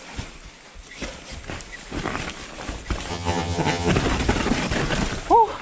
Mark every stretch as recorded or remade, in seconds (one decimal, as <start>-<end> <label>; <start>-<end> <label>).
0.0-3.1 recorded; 3.1-3.9 remade; 3.9-5.6 recorded